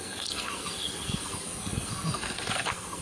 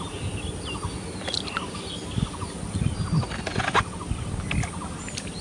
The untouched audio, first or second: second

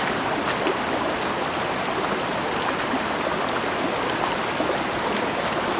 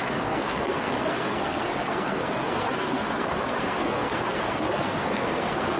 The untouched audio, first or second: first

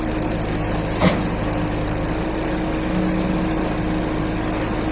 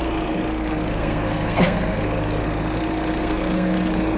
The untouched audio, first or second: first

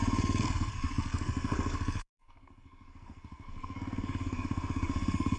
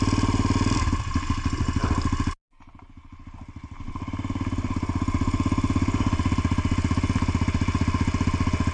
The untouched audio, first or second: second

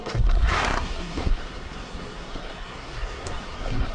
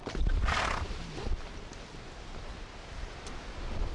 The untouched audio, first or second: second